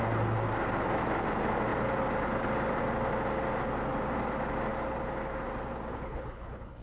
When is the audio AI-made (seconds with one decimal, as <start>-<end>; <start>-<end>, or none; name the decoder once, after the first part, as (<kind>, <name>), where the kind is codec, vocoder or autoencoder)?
5.9-6.8 (codec, HILCodec)